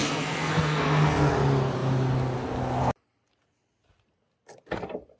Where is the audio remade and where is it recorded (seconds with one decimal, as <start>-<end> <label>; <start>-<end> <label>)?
0.0-1.3 remade; 1.3-5.2 recorded